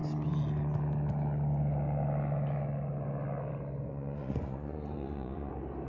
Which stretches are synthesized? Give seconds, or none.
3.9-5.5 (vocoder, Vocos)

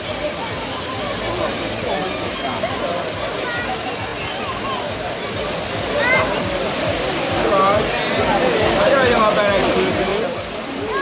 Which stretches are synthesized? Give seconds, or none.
none

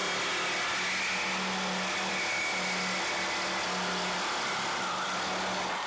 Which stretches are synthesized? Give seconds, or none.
none

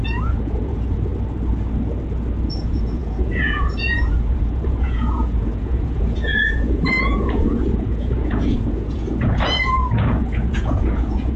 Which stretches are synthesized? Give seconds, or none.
0.0-1.1 (vocoder, Vocos); 2.5-11.4

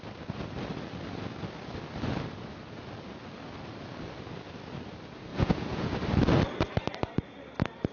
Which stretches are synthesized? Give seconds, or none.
5.3-5.9 (vocoder, Vocos)

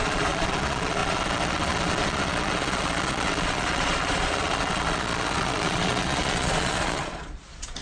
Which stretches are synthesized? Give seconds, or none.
0.0-7.8 (vocoder, Vocos)

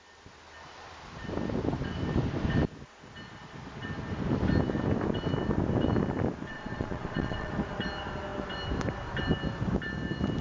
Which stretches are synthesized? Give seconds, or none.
6.5-7.5 (vocoder, Vocos)

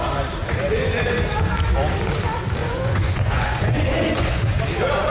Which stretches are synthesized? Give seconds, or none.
0.4-1.1 (vocoder, Vocos); 2.6-4.6